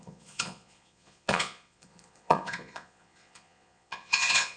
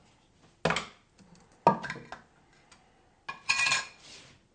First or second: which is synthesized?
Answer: first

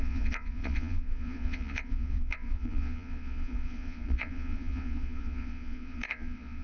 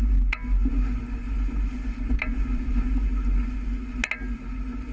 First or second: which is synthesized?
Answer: first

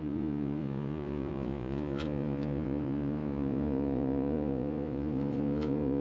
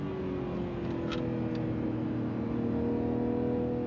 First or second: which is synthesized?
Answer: first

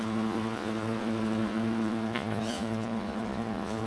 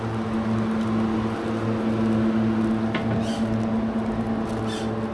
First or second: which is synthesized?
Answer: first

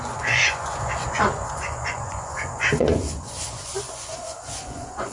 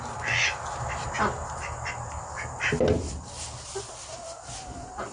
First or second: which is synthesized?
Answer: first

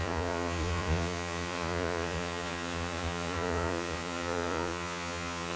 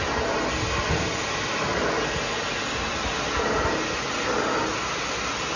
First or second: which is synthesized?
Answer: first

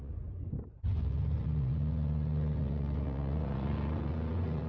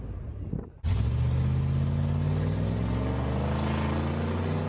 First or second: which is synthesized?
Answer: first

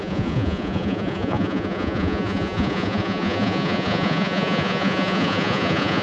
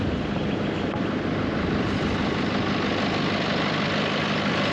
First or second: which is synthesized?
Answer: first